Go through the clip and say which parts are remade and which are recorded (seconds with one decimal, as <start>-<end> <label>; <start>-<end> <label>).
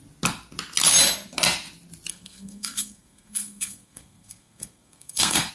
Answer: 0.0-2.1 recorded; 2.1-5.5 remade